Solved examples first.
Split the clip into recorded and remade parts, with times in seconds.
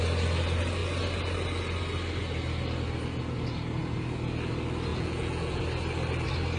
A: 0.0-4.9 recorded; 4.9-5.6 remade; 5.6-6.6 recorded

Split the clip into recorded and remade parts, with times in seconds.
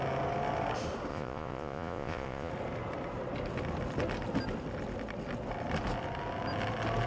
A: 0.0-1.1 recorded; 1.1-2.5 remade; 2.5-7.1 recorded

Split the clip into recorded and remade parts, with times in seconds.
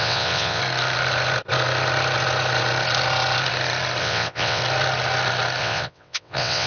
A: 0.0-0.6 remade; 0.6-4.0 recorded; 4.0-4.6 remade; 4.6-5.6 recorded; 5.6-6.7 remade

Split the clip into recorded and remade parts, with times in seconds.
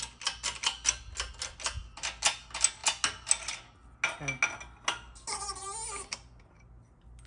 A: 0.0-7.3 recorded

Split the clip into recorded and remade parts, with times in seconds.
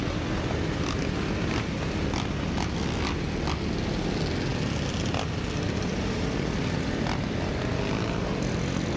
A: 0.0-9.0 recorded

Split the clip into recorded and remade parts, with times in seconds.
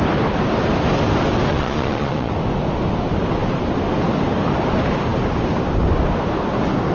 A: 0.0-1.5 recorded; 1.5-2.3 remade; 2.3-6.9 recorded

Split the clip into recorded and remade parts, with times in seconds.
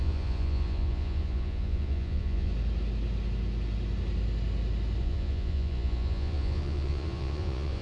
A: 0.0-2.5 remade; 2.5-5.0 recorded; 5.0-7.8 remade